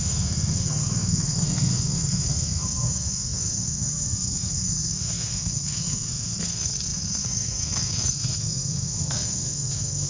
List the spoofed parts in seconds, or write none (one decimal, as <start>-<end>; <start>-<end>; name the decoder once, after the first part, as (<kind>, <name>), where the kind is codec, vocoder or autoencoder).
0.0-10.1 (codec, SNAC)